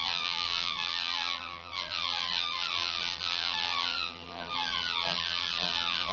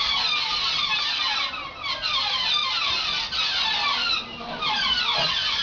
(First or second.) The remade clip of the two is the first